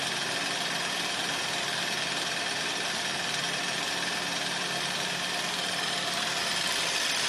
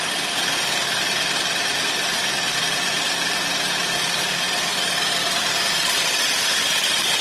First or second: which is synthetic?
second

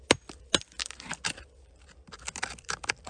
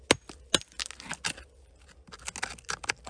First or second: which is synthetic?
first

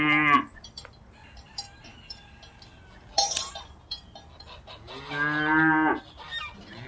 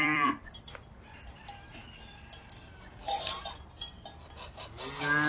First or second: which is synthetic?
second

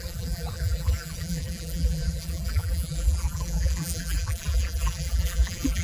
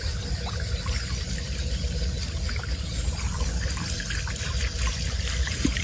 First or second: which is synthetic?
first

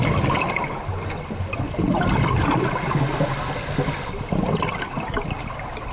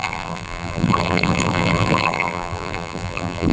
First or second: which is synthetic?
second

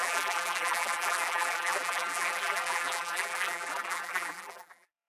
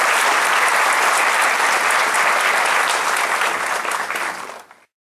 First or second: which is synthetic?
first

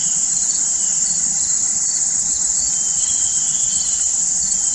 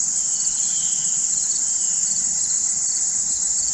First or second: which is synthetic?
first